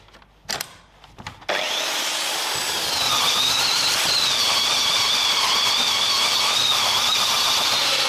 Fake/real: real